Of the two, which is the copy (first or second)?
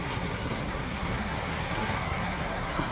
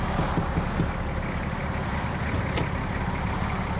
first